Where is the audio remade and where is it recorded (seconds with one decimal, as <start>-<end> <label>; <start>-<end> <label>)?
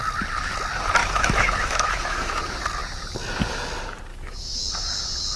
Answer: 0.0-1.0 recorded; 1.0-2.4 remade; 2.4-4.1 recorded; 4.1-4.6 remade; 4.6-5.4 recorded